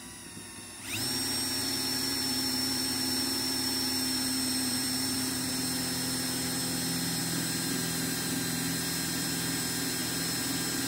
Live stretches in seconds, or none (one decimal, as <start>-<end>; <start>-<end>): 0.0-1.6; 5.5-10.9